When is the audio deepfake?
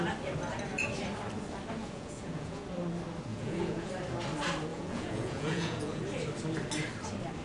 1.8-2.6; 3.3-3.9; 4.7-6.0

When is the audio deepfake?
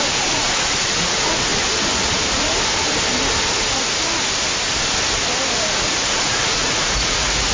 0.0-1.5; 5.9-7.5